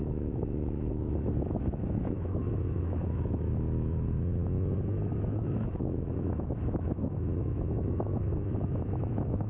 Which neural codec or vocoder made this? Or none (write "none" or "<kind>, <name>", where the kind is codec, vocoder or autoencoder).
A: autoencoder, DAC-VAE